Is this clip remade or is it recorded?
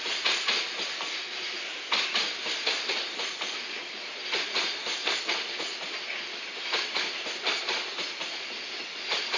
recorded